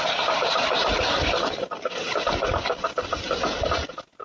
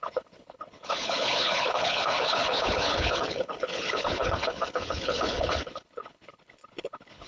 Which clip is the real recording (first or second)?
first